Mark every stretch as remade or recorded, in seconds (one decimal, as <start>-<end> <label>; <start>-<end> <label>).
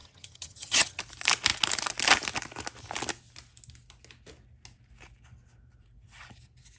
0.0-1.0 remade; 1.0-6.8 recorded